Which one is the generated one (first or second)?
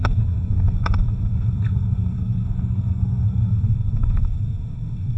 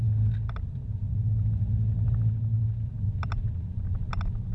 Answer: first